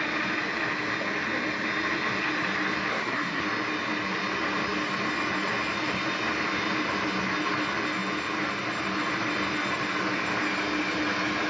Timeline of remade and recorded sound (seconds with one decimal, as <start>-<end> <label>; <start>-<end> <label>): 0.0-2.9 recorded; 2.9-3.4 remade; 3.4-11.5 recorded